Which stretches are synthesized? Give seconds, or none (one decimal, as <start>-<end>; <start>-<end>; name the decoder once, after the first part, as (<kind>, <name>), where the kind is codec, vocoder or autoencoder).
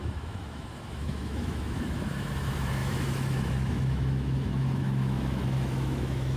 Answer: 0.0-6.4 (autoencoder, DAC-VAE)